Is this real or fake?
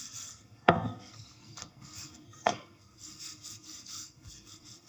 fake